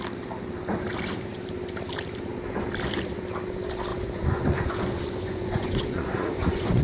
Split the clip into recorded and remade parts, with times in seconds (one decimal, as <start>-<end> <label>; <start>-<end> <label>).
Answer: 0.0-3.9 recorded; 3.9-6.8 remade